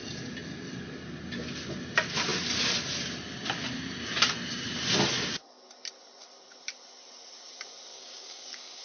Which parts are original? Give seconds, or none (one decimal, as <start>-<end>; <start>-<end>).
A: 0.0-7.9